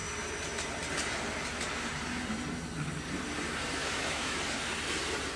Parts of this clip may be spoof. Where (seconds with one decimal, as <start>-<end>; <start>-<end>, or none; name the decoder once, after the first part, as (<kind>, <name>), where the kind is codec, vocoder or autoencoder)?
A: 3.8-4.4 (autoencoder, DAC-VAE)